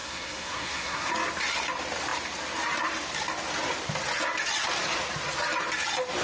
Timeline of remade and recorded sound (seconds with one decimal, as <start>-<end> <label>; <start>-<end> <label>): 0.0-1.1 remade; 1.1-6.2 recorded